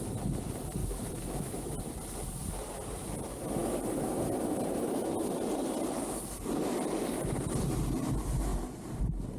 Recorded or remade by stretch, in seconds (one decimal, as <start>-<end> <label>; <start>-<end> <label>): 0.0-0.8 recorded; 0.8-1.7 remade; 1.7-9.4 recorded